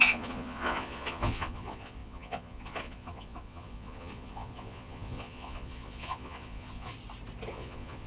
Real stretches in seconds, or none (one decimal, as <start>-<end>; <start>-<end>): 6.9-7.5